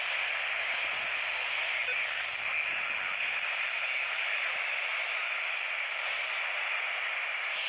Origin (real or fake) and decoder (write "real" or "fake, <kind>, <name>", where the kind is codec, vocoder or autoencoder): real